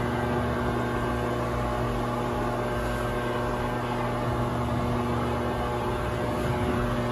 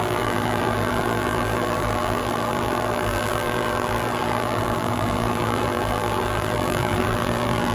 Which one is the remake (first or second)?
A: second